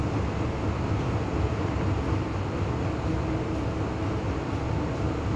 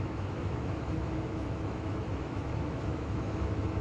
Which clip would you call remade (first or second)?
second